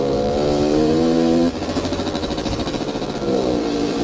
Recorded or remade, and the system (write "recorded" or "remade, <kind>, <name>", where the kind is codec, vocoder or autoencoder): remade, vocoder, BigVGAN v2